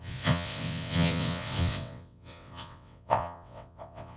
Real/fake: fake